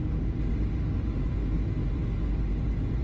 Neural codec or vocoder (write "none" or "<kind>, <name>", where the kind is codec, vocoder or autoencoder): none